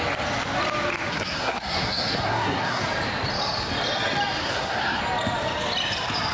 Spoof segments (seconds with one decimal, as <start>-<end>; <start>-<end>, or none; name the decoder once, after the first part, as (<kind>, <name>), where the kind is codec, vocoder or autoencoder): 1.1-2.8 (codec, SNAC); 4.4-5.0